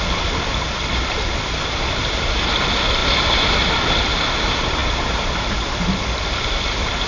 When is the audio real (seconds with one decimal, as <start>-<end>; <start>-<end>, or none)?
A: 0.0-7.1